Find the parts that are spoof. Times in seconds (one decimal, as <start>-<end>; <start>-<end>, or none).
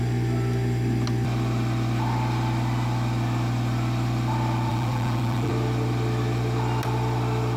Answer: 4.7-5.5